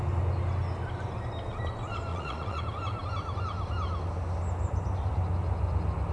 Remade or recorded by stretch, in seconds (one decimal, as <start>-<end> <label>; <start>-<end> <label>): 0.0-2.1 recorded; 2.1-2.6 remade; 2.6-6.1 recorded